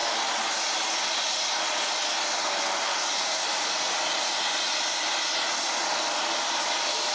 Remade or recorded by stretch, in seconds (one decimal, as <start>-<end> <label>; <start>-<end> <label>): 0.0-7.1 recorded